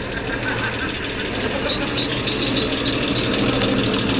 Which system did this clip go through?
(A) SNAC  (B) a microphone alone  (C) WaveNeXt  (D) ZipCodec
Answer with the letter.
B